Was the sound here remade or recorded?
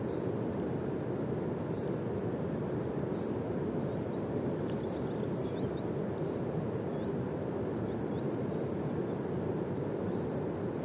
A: recorded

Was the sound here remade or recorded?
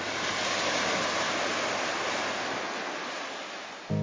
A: recorded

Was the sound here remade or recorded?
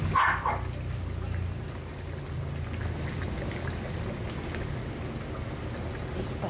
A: recorded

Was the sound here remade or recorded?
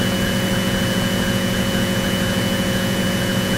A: remade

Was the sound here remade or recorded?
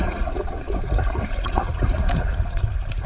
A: remade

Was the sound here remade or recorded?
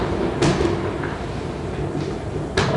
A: recorded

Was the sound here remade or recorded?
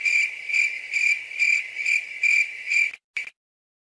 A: recorded